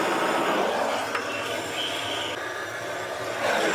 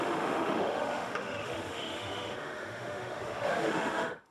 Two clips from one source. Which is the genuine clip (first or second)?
first